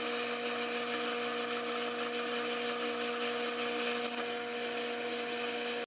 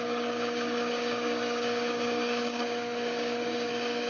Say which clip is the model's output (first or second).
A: second